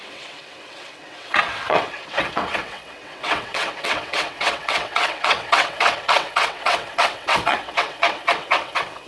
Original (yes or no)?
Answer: no